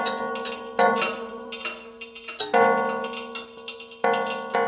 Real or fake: real